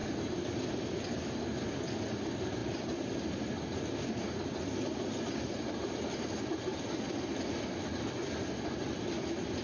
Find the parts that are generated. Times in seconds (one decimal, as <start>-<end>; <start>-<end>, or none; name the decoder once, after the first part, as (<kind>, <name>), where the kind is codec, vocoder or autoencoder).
none